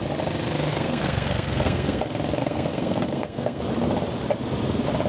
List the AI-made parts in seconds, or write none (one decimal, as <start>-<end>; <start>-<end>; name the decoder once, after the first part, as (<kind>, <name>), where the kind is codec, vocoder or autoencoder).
0.7-2.0 (codec, SNAC); 2.4-3.6